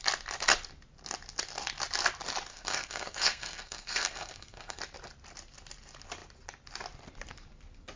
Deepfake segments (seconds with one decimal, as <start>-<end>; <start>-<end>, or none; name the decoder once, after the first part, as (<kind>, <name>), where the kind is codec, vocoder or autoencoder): 2.5-4.8 (codec, SNAC)